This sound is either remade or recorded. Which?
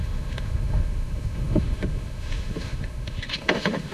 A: remade